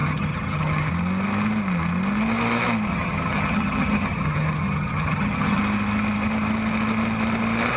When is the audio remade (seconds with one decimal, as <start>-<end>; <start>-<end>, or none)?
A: 0.0-0.9; 2.9-5.6